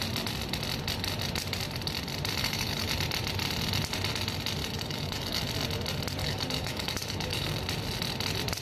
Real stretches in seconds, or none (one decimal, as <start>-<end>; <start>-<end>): 0.0-2.4; 2.9-4.6; 5.4-6.2; 7.6-8.6